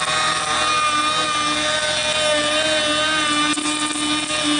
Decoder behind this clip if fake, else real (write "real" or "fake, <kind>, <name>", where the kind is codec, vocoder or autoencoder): real